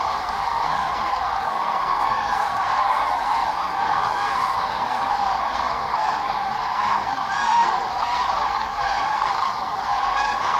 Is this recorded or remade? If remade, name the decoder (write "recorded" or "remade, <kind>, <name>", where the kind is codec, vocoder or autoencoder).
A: remade, codec, SNAC